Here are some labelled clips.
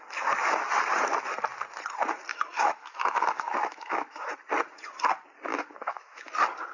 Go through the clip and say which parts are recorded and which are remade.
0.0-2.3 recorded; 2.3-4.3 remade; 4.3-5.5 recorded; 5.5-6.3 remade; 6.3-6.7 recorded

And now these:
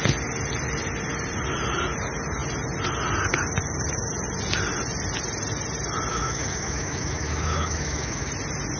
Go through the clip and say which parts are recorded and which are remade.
0.0-6.1 recorded; 6.1-8.3 remade; 8.3-8.8 recorded

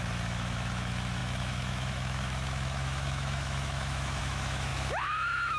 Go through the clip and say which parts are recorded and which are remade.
0.0-5.6 remade

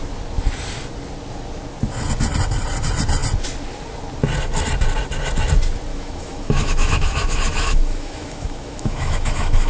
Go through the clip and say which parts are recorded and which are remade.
0.0-5.9 recorded; 5.9-9.7 remade

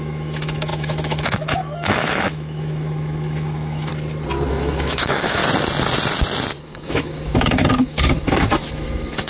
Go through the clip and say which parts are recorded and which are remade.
0.0-3.9 remade; 3.9-4.5 recorded; 4.5-5.4 remade; 5.4-6.6 recorded; 6.6-9.3 remade

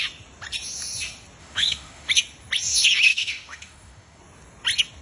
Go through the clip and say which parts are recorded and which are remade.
0.0-1.4 recorded; 1.4-2.1 remade; 2.1-3.1 recorded; 3.1-4.2 remade; 4.2-5.0 recorded

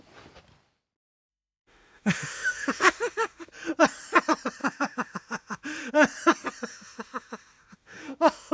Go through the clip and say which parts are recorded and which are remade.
0.0-1.3 recorded; 1.3-3.5 remade; 3.5-4.6 recorded; 4.6-5.9 remade; 5.9-6.7 recorded; 6.7-8.5 remade

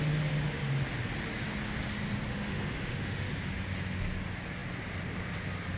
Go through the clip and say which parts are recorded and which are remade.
0.0-2.3 recorded; 2.3-3.3 remade; 3.3-5.8 recorded